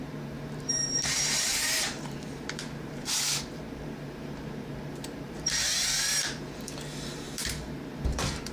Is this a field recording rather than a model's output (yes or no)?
no